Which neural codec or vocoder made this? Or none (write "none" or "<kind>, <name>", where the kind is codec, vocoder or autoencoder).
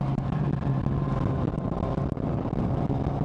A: none